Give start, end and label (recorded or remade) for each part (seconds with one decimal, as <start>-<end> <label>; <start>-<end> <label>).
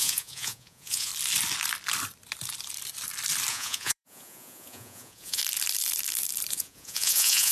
0.0-1.1 remade; 1.1-3.5 recorded; 3.5-5.4 remade; 5.4-6.5 recorded; 6.5-7.5 remade